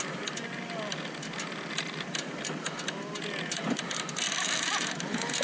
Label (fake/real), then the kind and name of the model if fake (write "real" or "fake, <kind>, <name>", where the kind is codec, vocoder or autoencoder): real